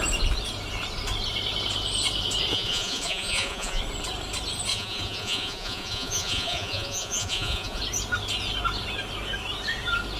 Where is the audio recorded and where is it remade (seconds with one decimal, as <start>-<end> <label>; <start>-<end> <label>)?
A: 0.0-2.5 recorded; 2.5-3.8 remade; 3.8-4.7 recorded; 4.7-7.8 remade; 7.8-10.2 recorded